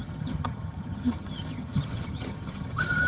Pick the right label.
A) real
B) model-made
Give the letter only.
B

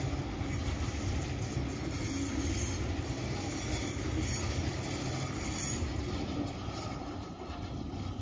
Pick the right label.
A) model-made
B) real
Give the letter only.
B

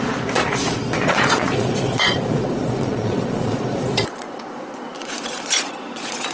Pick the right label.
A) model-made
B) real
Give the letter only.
A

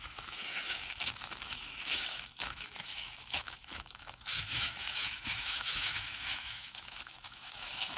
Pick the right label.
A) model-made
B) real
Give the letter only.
A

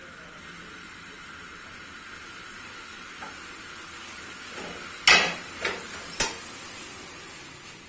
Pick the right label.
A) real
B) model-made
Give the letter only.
A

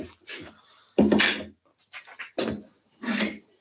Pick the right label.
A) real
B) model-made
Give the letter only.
A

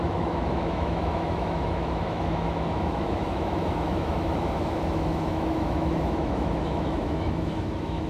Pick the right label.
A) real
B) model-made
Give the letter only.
B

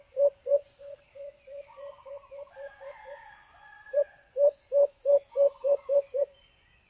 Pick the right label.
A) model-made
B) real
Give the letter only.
A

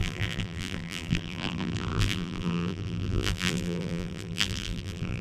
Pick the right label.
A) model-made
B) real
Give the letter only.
A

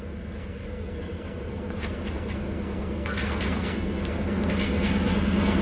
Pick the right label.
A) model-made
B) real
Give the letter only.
A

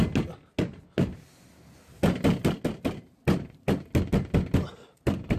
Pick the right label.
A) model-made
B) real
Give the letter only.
B